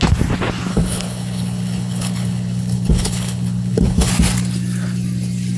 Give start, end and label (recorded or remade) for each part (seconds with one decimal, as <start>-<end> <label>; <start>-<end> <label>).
0.0-0.7 recorded; 0.7-4.1 remade; 4.1-5.6 recorded

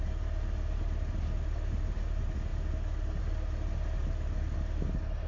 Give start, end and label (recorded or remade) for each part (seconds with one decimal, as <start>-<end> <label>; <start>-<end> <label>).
0.0-5.3 recorded

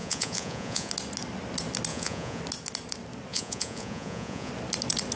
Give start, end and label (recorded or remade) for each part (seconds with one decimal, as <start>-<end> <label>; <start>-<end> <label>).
0.0-0.9 remade; 0.9-1.9 recorded; 1.9-2.4 remade; 2.4-3.3 recorded; 3.3-4.5 remade; 4.5-5.2 recorded

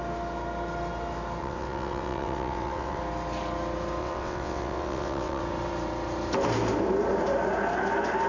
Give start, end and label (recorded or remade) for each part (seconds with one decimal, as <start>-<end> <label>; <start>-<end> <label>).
0.0-1.4 recorded; 1.4-3.0 remade; 3.0-4.0 recorded; 4.0-5.4 remade; 5.4-8.3 recorded

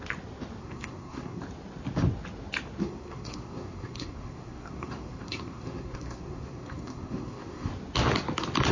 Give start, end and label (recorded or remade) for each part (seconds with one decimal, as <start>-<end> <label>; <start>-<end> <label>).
0.0-0.6 recorded; 0.6-1.4 remade; 1.4-2.8 recorded; 2.8-7.7 remade; 7.7-8.7 recorded

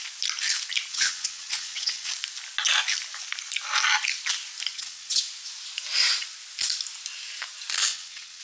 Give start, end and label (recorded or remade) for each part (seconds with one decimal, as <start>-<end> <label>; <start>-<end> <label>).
0.0-0.9 recorded; 0.9-2.1 remade; 2.1-4.7 recorded; 4.7-5.2 remade; 5.2-7.9 recorded; 7.9-8.4 remade